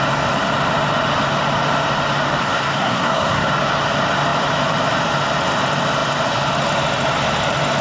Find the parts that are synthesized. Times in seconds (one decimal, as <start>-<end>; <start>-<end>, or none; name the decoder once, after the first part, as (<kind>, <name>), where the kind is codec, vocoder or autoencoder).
2.4-3.5 (codec, SNAC)